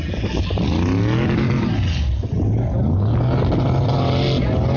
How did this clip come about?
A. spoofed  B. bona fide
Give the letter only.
B